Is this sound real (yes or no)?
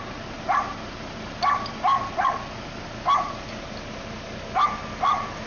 yes